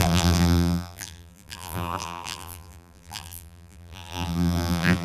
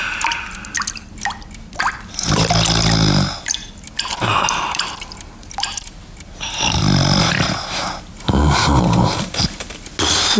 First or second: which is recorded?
second